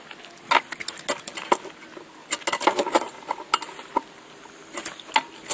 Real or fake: real